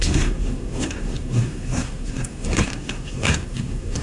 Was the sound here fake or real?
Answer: fake